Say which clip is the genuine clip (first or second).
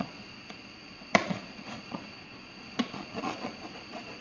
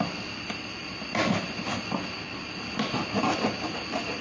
second